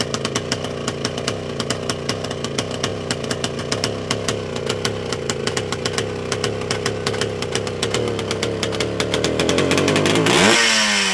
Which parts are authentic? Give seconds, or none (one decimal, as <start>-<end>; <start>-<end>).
0.0-11.1